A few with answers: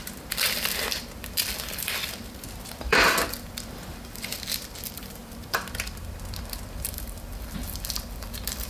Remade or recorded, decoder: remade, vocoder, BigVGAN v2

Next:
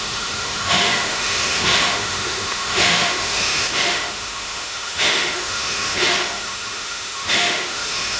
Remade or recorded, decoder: remade, autoencoder, DAC-VAE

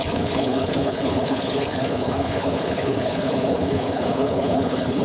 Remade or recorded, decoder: remade, codec, HILCodec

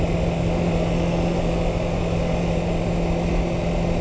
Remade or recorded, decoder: recorded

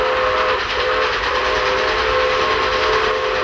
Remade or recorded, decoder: recorded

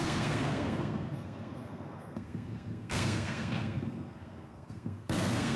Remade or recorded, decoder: remade, codec, SNAC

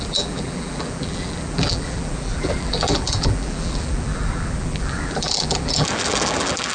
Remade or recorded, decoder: remade, vocoder, BigVGAN v2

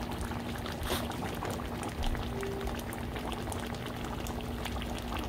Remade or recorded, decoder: recorded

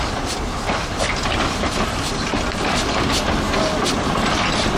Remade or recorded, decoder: recorded